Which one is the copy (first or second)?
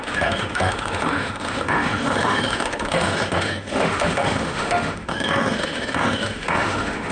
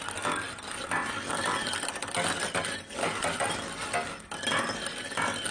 first